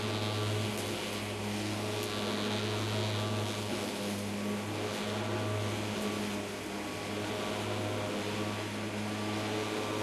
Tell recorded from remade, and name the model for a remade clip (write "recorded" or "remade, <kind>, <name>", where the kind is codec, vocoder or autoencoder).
recorded